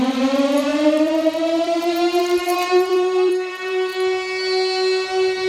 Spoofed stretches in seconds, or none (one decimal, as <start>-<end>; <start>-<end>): 0.0-3.9